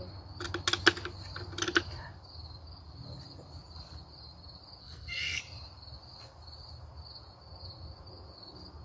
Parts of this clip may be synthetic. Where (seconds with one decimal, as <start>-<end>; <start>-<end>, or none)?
4.8-5.4